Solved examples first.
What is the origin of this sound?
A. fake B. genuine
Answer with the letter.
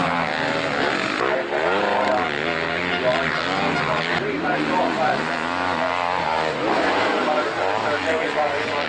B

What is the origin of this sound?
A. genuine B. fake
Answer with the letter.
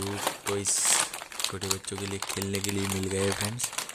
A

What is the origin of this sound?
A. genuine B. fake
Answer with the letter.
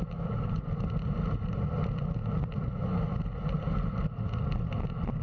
A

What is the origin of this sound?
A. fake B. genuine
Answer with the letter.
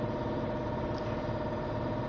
B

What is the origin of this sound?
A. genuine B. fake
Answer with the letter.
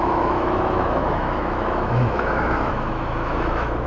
B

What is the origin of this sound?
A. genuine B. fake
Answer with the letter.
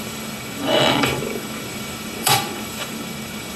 B